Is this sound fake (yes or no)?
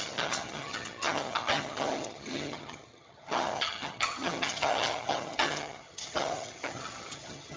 yes